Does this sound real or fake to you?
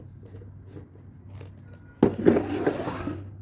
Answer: real